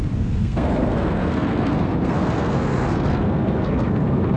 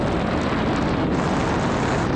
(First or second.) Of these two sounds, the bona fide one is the second